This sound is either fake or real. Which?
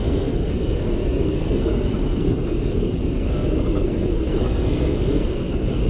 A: fake